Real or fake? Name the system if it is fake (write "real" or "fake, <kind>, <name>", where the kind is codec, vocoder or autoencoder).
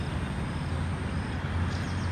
real